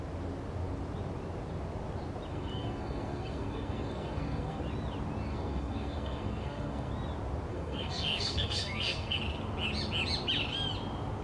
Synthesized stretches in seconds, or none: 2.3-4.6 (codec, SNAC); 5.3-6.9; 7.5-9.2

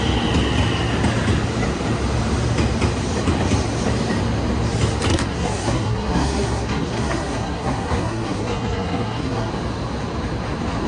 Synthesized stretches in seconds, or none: 5.1-9.5 (codec, SNAC)

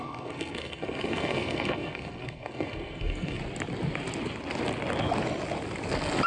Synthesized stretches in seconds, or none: 0.0-3.4 (codec, SNAC)

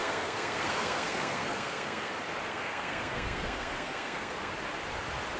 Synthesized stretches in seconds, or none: 0.0-2.1 (codec, SNAC); 2.5-4.5

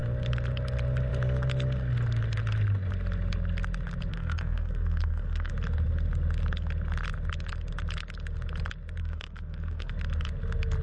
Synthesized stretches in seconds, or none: 4.1-5.5 (codec, SNAC); 9.0-9.9

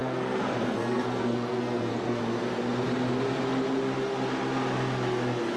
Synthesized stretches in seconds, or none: 0.0-2.2 (codec, SNAC)

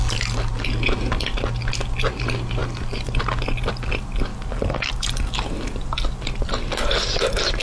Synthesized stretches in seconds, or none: none

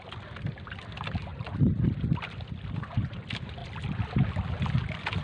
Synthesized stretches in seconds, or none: none